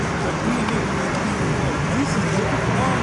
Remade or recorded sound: recorded